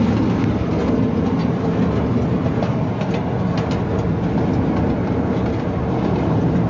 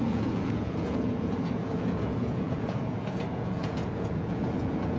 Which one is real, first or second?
first